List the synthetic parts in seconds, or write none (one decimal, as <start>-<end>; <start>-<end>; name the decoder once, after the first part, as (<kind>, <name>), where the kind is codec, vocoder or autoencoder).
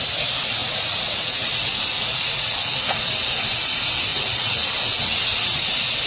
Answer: 0.6-3.1 (vocoder, Vocos); 4.1-4.7